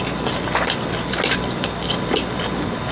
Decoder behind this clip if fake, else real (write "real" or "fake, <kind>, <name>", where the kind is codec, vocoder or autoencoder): real